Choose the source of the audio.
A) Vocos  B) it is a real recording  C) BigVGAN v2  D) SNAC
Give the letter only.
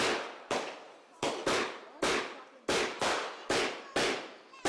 B